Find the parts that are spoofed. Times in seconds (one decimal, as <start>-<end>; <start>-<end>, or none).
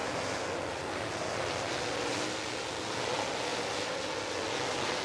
none